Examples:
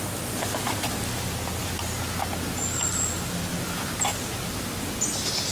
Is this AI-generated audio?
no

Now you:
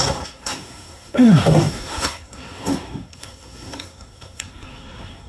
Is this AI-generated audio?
yes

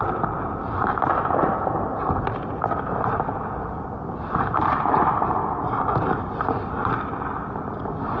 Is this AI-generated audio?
no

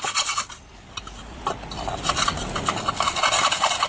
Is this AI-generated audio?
no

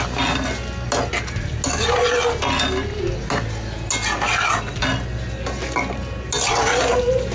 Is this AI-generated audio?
no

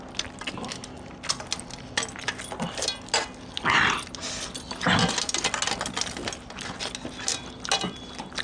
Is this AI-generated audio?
no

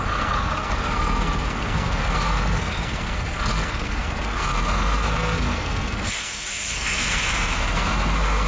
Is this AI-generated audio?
yes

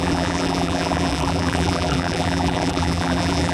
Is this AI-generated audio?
yes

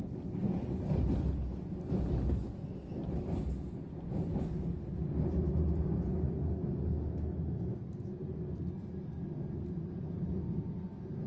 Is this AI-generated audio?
no